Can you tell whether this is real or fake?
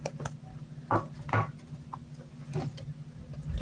real